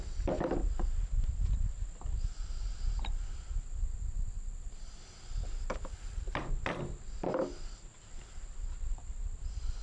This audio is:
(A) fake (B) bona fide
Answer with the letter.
B